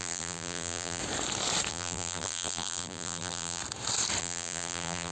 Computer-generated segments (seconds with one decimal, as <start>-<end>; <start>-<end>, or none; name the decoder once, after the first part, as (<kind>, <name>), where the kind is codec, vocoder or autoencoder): 0.0-1.0 (vocoder, BigVGAN v2); 1.7-3.6; 4.2-5.1